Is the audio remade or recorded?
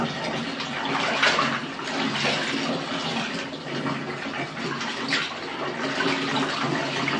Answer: recorded